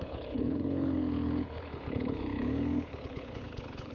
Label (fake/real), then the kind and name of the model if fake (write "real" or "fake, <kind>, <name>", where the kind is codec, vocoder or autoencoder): fake, codec, HILCodec